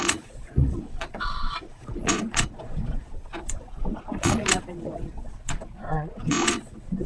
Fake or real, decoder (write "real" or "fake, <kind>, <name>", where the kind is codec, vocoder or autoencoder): fake, vocoder, Vocos